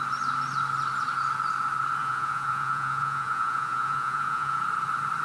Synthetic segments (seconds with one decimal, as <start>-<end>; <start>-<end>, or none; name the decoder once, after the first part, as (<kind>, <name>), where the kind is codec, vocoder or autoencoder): 2.0-4.6 (vocoder, Vocos)